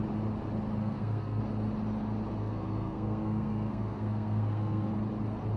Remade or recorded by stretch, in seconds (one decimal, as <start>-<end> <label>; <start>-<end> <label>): 0.0-0.8 recorded; 0.8-1.4 remade; 1.4-2.4 recorded; 2.4-4.9 remade; 4.9-5.6 recorded